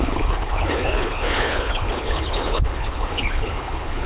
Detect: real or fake fake